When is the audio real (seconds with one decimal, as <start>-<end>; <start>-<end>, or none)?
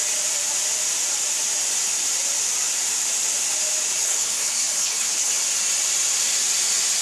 0.0-4.0; 5.3-7.0